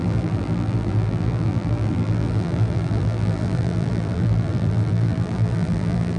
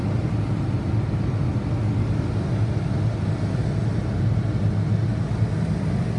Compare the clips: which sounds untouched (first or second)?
second